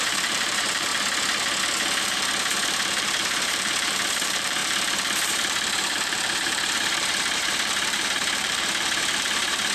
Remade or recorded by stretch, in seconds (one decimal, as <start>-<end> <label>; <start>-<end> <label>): 0.0-0.9 remade; 0.9-2.0 recorded; 2.0-9.7 remade